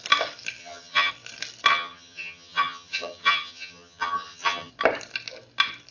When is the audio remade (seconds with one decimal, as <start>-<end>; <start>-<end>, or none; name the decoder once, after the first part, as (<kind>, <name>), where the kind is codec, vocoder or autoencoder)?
0.6-1.1 (vocoder, HiFi-GAN); 1.7-4.7